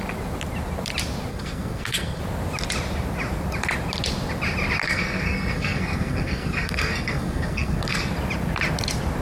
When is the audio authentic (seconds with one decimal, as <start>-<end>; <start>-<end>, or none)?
0.0-1.3; 2.2-4.8; 8.1-9.2